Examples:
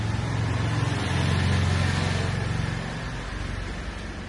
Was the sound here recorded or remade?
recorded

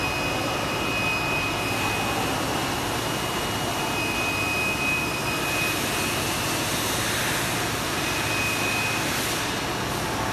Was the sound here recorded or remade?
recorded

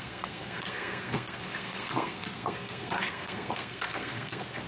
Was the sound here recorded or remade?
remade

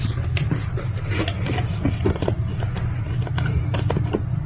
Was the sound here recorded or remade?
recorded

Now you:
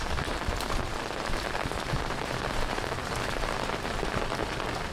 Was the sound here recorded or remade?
remade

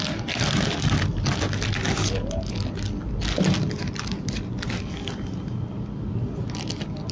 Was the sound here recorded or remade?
recorded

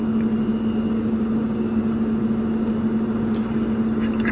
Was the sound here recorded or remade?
recorded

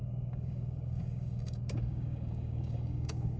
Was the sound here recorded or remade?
remade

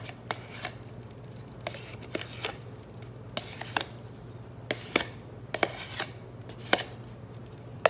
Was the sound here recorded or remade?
recorded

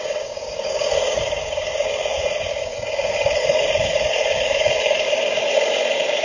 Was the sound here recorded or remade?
remade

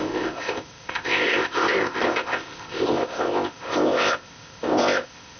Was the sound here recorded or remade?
remade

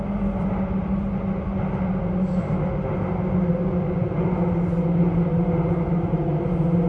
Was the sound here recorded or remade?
recorded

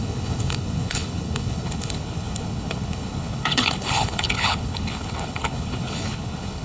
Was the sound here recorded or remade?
remade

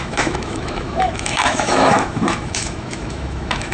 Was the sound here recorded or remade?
remade